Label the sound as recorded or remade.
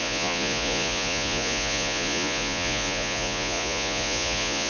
remade